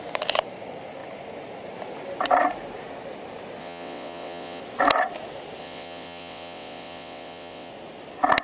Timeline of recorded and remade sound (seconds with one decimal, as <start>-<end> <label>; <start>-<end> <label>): 0.0-3.6 recorded; 3.6-4.6 remade; 4.6-5.6 recorded; 5.6-7.7 remade; 7.7-8.4 recorded